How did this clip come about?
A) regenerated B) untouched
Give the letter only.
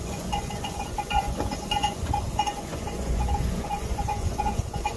A